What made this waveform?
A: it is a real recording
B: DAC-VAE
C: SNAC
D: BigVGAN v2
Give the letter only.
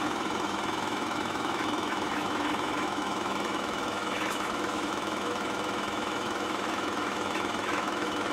B